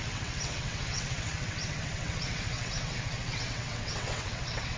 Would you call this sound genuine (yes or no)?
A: no